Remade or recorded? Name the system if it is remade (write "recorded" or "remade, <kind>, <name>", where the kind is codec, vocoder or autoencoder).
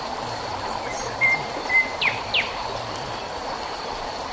recorded